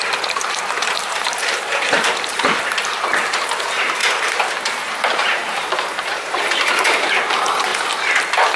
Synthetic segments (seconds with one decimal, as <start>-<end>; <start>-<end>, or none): 0.0-4.0; 4.7-7.7